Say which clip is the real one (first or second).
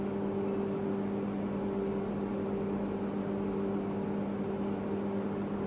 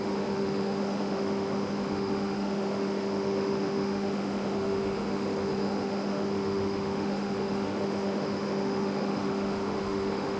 first